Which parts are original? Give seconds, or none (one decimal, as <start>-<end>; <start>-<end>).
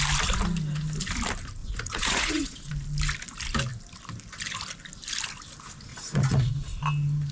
0.0-1.6; 2.7-5.9; 6.5-7.3